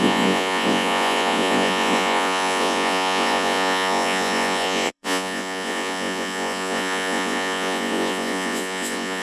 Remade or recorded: remade